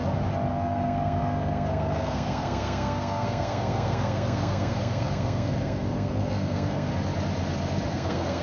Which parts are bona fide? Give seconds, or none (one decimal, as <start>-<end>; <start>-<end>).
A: 0.0-0.5; 6.9-7.9

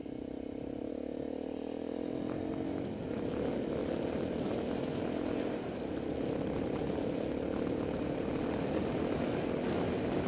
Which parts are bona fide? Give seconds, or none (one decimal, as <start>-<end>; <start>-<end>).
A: 0.0-3.8; 5.3-10.3

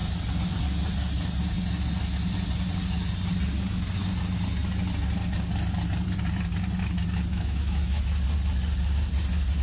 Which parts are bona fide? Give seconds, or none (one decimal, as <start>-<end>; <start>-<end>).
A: 0.0-7.3; 8.0-9.6

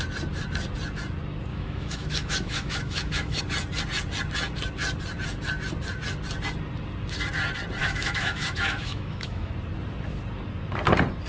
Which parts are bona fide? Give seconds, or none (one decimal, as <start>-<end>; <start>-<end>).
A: 0.0-1.5; 3.4-7.8; 9.5-11.3

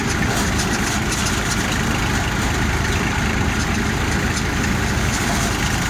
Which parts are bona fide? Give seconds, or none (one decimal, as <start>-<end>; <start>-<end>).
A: 0.0-5.9

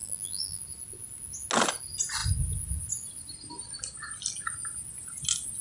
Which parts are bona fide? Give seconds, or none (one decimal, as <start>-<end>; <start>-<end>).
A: 0.6-5.6

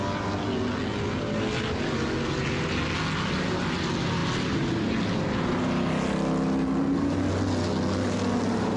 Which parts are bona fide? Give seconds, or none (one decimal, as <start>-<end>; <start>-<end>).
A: 0.0-8.8